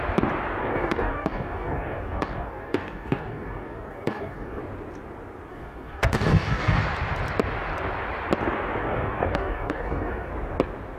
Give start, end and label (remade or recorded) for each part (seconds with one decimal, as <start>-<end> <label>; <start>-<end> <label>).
0.0-0.6 recorded; 0.6-4.6 remade; 4.6-5.5 recorded; 5.5-6.8 remade; 6.8-8.8 recorded; 8.8-10.3 remade; 10.3-11.0 recorded